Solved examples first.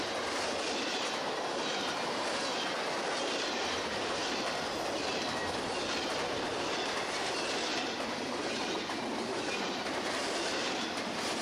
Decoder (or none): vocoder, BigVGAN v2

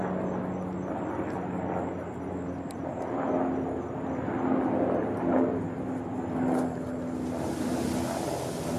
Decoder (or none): none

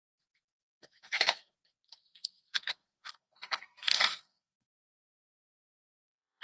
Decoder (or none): codec, SNAC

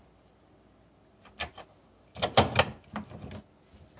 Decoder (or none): none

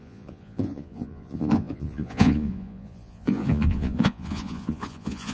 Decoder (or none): vocoder, Vocos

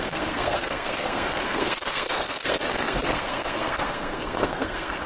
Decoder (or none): codec, SNAC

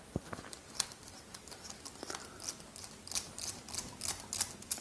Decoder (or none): none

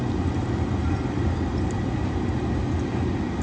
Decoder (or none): none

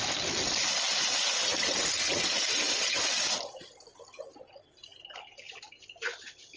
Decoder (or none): none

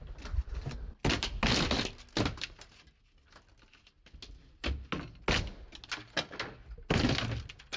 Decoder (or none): none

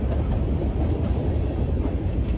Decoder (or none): none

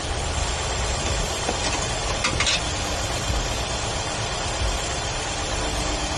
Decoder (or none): none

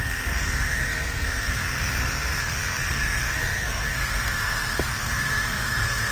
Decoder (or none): codec, SNAC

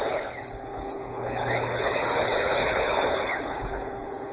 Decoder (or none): codec, HILCodec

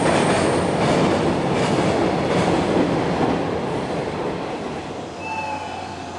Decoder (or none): none